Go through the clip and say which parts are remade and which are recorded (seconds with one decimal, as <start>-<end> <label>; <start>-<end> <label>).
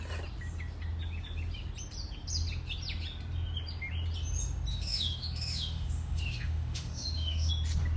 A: 0.0-4.7 recorded; 4.7-7.5 remade; 7.5-8.0 recorded